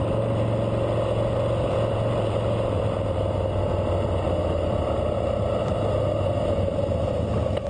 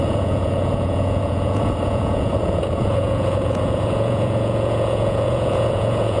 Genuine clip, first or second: first